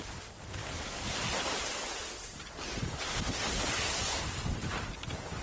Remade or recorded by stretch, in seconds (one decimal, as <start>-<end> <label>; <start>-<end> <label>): 0.0-0.6 remade; 0.6-3.3 recorded; 3.3-4.0 remade; 4.0-5.4 recorded